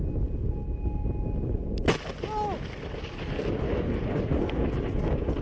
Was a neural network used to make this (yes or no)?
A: no